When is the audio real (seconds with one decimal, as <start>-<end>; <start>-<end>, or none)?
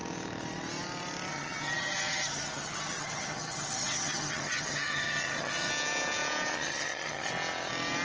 0.0-1.3; 5.7-6.5; 7.3-8.0